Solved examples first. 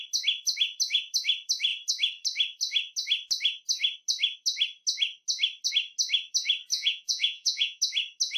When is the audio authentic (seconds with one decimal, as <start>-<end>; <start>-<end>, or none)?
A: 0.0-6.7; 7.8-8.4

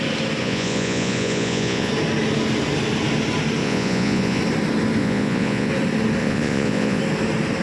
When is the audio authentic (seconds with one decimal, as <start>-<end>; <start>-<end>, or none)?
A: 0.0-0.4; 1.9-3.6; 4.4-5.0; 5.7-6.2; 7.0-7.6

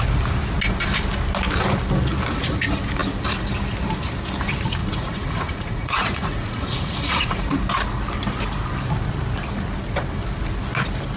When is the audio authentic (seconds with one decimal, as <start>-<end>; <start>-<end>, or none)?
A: 0.0-4.8; 7.4-11.2